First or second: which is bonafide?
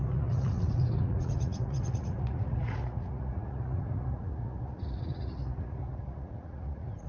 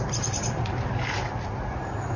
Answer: second